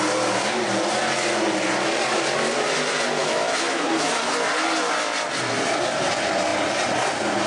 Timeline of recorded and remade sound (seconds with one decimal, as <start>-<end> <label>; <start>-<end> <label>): 0.0-3.2 recorded; 3.2-3.9 remade; 3.9-7.5 recorded